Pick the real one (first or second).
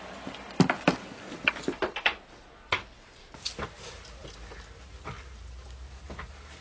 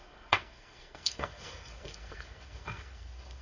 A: first